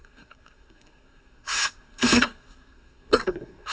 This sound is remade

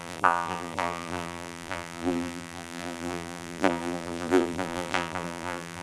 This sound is remade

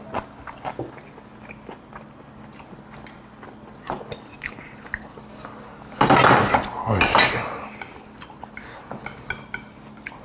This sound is recorded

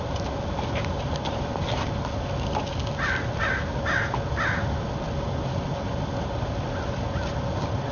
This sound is recorded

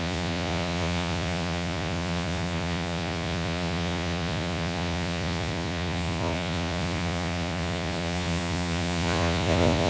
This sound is remade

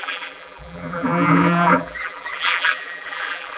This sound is remade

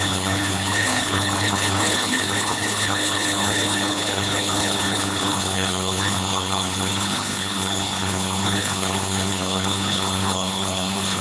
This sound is remade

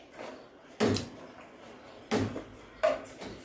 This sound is recorded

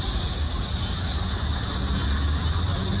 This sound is recorded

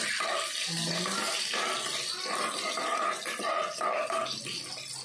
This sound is recorded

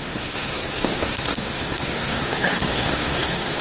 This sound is remade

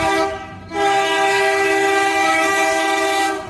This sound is remade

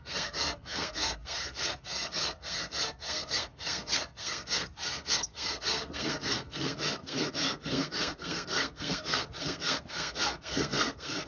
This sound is remade